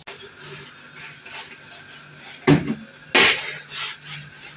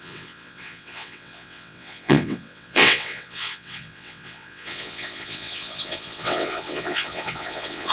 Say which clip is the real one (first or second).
first